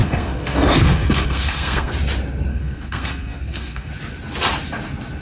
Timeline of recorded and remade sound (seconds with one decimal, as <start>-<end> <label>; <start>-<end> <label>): 0.0-1.9 remade; 1.9-2.5 recorded; 2.5-3.9 remade; 3.9-5.2 recorded